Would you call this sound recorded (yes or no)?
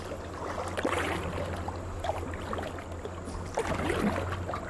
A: yes